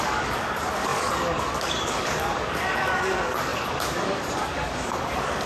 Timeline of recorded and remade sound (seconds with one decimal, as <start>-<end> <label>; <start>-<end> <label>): 0.0-5.5 remade